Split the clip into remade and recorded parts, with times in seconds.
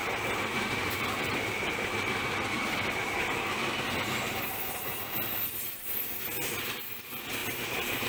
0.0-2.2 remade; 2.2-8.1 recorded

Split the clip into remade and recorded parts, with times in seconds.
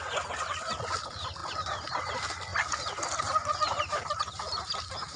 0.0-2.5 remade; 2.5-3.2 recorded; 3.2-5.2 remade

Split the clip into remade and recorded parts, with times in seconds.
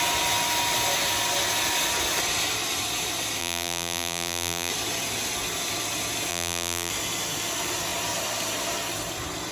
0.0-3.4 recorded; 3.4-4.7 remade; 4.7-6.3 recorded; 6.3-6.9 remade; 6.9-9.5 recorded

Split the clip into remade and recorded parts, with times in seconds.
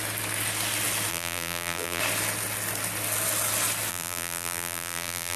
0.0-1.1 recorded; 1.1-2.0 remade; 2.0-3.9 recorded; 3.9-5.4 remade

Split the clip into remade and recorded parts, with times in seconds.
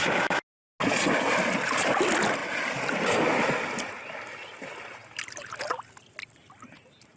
0.0-2.4 recorded; 2.4-2.9 remade; 2.9-7.2 recorded